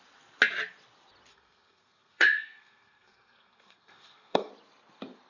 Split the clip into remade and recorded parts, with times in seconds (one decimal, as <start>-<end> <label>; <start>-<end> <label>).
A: 0.0-1.3 recorded; 1.3-4.5 remade; 4.5-5.3 recorded